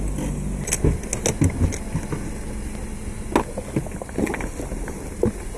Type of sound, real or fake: real